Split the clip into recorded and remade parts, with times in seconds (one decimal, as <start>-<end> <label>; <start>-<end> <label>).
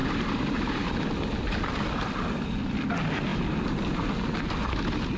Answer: 0.0-0.9 remade; 0.9-5.2 recorded